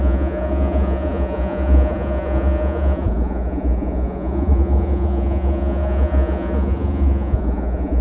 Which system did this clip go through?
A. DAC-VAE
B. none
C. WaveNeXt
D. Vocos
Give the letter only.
D